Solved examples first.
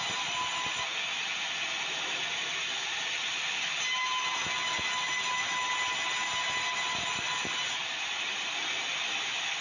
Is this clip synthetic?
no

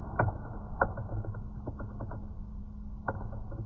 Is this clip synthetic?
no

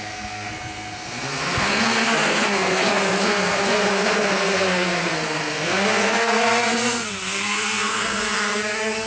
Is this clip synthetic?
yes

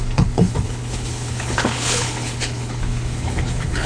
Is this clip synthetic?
yes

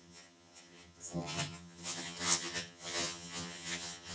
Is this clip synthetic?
yes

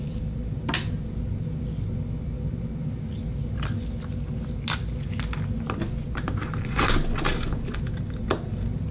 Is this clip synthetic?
no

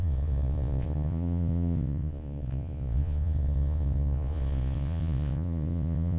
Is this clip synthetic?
yes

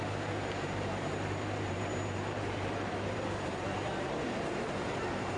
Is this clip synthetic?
yes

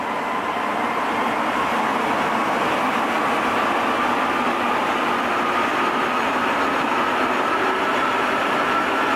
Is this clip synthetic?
no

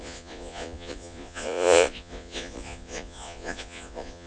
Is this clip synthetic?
yes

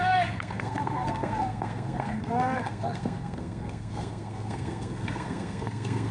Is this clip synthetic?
yes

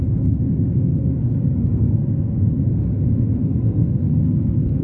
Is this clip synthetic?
yes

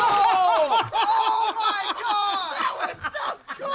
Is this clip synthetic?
yes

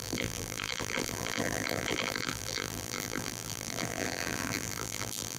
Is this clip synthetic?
yes